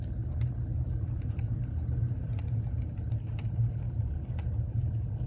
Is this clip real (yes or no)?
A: yes